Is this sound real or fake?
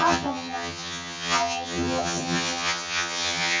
fake